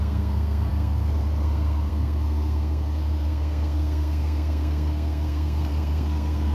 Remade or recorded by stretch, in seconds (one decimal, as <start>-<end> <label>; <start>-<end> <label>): 0.0-6.5 remade